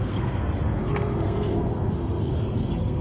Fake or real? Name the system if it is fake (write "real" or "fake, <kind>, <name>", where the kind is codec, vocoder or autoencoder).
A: fake, codec, SNAC